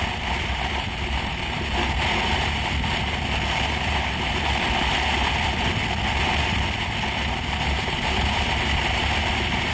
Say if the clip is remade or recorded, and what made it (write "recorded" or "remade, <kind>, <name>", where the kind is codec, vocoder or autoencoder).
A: recorded